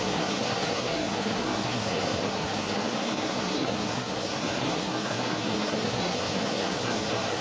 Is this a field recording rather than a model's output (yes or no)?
no